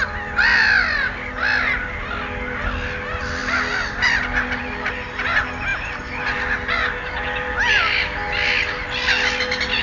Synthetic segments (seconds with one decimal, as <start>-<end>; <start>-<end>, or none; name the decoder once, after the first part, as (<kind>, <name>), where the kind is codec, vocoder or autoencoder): none